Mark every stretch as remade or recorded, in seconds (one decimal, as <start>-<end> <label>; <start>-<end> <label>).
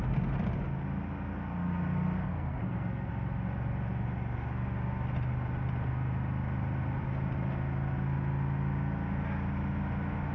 0.0-2.2 recorded; 2.2-3.1 remade; 3.1-10.3 recorded